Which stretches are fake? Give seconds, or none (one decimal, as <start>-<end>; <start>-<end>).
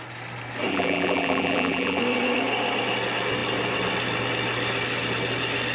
0.7-2.0